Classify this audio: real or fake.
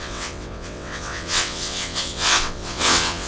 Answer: fake